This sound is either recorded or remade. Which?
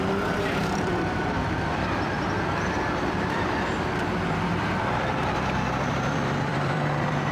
remade